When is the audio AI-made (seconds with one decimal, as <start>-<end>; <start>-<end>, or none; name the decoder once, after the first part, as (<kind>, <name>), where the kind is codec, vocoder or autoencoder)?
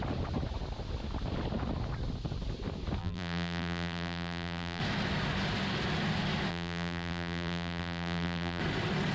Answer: 3.0-4.8 (vocoder, BigVGAN v2); 6.5-8.6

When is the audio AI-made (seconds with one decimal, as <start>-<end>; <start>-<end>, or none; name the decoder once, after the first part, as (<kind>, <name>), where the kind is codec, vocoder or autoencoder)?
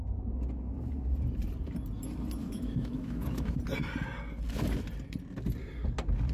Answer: 2.4-3.6 (autoencoder, DAC-VAE)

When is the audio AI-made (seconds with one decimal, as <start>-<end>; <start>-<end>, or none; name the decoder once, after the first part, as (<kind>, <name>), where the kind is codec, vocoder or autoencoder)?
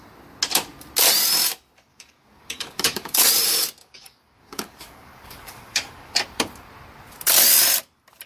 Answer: 1.9-3.3 (codec, DAC); 3.8-6.2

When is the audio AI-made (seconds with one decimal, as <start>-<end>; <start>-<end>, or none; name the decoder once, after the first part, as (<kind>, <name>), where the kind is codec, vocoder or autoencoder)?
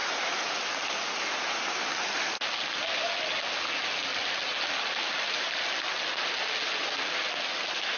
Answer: none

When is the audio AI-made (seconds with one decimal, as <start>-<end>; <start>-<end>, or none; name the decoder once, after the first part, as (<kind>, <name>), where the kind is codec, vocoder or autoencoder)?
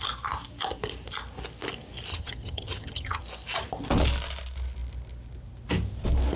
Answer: 2.1-3.2 (vocoder, HiFi-GAN)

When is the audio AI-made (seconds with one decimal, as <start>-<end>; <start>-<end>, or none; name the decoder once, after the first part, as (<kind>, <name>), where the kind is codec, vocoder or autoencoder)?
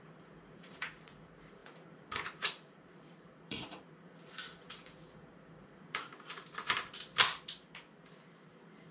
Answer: 0.0-6.1 (vocoder, Vocos)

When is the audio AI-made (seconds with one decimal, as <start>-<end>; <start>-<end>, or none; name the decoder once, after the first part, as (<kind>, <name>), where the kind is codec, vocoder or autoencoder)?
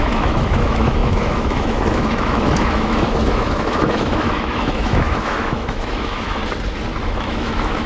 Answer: 0.0-6.4 (autoencoder, DAC-VAE); 7.0-7.9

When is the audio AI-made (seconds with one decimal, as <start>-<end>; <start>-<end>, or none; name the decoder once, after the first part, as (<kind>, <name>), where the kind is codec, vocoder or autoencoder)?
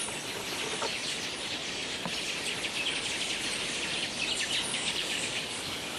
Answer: 4.7-6.0 (codec, DAC)